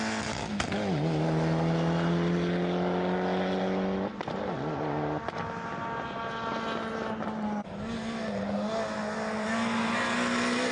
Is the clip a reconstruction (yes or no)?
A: no